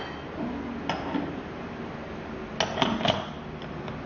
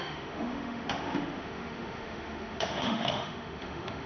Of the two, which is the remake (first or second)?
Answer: second